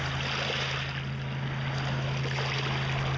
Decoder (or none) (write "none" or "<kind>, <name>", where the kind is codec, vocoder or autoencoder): none